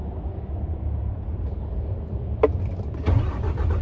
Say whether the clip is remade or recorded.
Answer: recorded